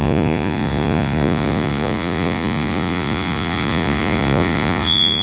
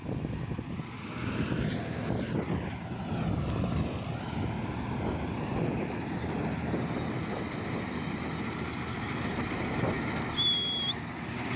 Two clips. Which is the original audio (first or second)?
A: second